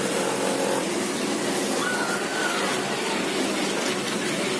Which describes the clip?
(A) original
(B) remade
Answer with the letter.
A